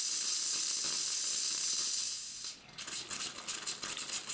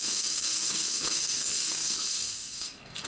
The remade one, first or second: second